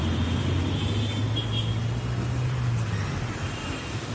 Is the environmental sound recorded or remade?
recorded